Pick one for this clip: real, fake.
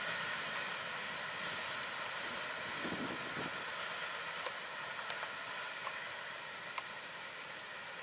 real